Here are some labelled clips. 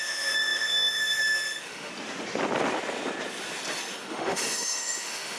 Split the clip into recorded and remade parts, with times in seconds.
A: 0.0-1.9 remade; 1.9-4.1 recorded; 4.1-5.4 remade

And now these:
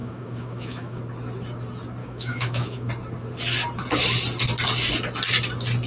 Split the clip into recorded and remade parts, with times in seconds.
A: 0.0-1.0 remade; 1.0-2.0 recorded; 2.0-2.9 remade; 2.9-5.9 recorded

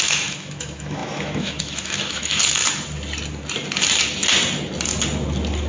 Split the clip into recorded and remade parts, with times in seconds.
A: 0.0-2.6 remade; 2.6-5.7 recorded

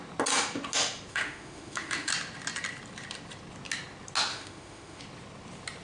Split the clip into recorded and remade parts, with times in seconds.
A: 0.0-1.1 recorded; 1.1-2.1 remade; 2.1-4.3 recorded; 4.3-5.0 remade; 5.0-5.8 recorded

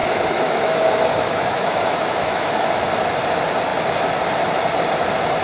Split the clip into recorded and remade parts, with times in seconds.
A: 0.0-2.9 remade; 2.9-5.4 recorded

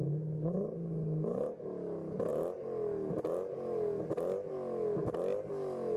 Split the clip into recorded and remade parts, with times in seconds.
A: 0.0-6.0 recorded